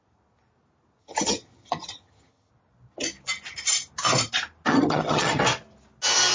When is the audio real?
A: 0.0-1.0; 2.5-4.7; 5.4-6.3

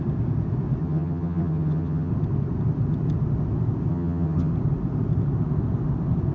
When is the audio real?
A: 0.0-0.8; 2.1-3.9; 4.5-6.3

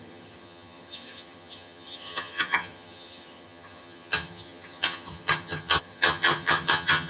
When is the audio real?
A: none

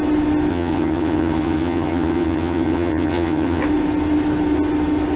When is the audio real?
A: 0.0-0.5; 3.6-5.2